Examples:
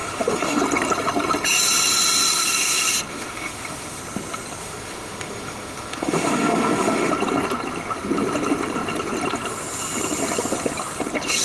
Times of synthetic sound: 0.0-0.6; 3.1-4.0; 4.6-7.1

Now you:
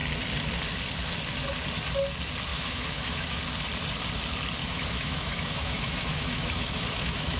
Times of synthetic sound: 2.5-3.4; 4.6-7.4

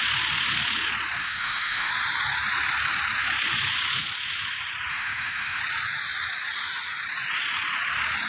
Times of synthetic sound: 1.2-1.9; 4.9-5.6